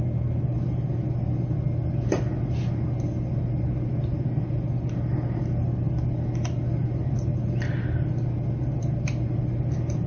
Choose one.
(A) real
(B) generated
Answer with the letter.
A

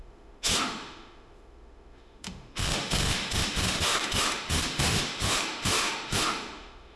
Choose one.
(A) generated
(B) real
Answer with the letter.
A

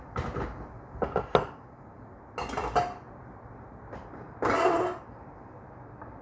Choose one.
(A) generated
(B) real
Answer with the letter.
B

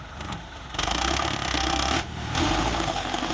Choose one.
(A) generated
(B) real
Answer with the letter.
A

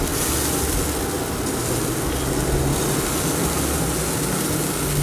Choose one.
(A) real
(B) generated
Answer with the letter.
A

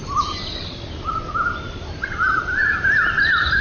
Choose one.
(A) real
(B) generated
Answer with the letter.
A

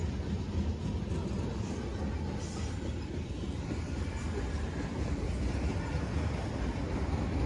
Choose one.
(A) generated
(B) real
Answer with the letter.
B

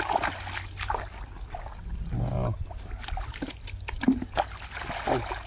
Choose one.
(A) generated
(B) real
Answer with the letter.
B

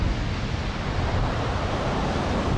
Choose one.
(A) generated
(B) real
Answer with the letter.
B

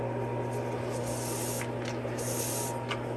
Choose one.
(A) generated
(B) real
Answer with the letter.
B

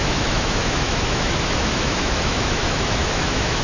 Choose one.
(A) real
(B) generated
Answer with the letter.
B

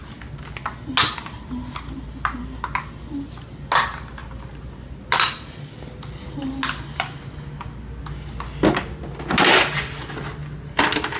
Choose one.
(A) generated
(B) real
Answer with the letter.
B